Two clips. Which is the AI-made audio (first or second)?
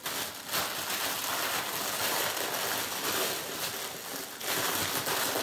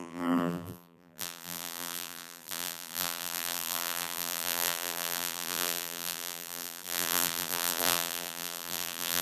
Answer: second